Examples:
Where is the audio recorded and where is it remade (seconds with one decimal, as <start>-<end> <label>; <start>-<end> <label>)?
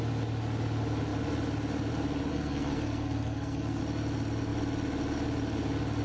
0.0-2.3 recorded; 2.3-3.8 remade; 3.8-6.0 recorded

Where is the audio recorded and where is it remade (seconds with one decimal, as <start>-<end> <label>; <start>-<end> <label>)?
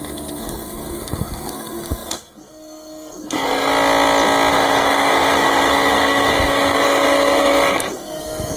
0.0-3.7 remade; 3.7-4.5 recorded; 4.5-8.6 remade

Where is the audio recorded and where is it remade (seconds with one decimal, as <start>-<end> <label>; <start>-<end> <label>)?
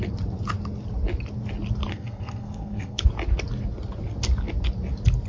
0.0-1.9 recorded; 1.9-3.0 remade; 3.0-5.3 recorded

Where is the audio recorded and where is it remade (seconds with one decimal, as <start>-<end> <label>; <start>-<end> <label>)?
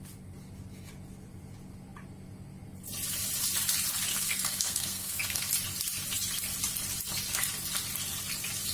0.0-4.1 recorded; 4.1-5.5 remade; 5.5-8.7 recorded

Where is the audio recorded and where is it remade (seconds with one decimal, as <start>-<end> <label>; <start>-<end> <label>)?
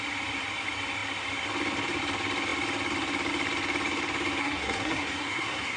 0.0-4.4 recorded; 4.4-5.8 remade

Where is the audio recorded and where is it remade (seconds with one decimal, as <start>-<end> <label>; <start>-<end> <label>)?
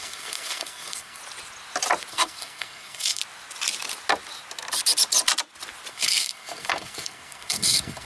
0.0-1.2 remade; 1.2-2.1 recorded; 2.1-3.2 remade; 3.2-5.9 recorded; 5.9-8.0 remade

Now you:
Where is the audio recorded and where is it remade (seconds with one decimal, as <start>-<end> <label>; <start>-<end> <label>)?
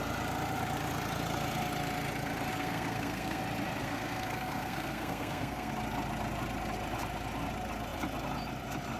0.0-2.5 recorded; 2.5-3.4 remade; 3.4-3.8 recorded; 3.8-5.7 remade; 5.7-9.0 recorded